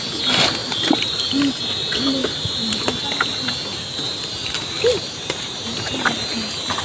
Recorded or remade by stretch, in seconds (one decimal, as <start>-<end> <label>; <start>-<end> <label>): 0.0-0.6 recorded; 0.6-1.6 remade; 1.6-2.2 recorded; 2.2-2.8 remade; 2.8-3.7 recorded; 3.7-6.0 remade; 6.0-6.8 recorded